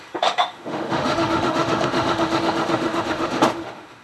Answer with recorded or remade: remade